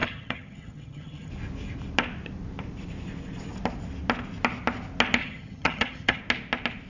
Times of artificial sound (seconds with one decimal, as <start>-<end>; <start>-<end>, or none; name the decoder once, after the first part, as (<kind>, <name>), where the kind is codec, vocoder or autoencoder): 0.0-1.3 (vocoder, HiFi-GAN); 5.2-6.2